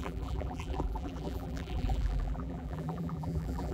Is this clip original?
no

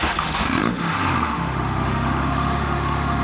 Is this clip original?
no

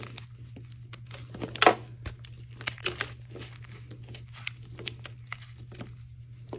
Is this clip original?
yes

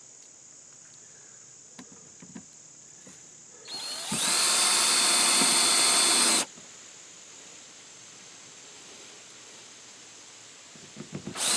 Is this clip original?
yes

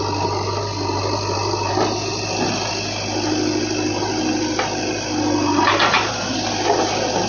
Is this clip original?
yes